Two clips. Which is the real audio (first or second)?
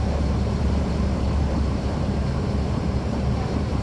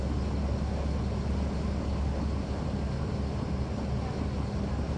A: second